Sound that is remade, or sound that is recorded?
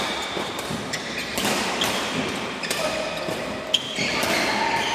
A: recorded